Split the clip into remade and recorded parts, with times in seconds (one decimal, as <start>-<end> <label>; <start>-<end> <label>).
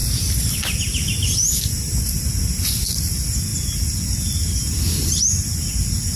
0.0-6.2 recorded